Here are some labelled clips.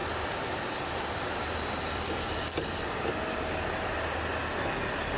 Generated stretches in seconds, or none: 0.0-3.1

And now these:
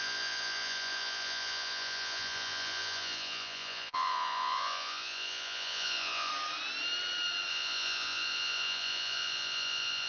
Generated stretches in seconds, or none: 0.0-6.3; 7.5-10.1

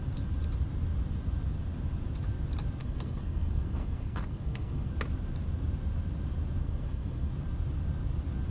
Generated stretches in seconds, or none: 2.8-4.9; 6.6-7.3